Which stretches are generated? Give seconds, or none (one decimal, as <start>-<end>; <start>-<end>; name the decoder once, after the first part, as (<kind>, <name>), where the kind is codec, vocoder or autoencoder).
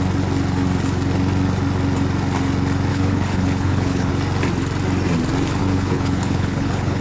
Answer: 2.9-4.1 (codec, HILCodec); 5.6-7.0